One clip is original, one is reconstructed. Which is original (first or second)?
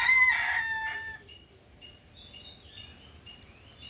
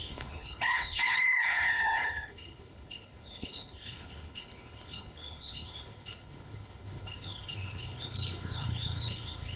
first